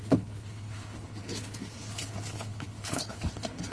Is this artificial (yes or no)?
yes